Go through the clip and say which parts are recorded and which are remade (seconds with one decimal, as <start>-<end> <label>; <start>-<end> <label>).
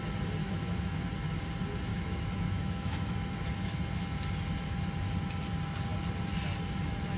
0.0-0.4 recorded; 0.4-1.0 remade; 1.0-1.9 recorded; 1.9-3.8 remade; 3.8-7.2 recorded